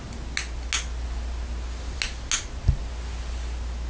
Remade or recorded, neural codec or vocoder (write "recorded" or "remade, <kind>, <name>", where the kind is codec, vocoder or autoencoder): recorded